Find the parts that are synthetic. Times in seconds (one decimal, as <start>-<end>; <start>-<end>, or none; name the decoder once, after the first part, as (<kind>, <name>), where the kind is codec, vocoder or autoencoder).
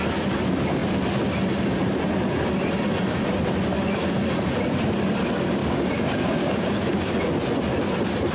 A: 5.6-7.2 (codec, DAC)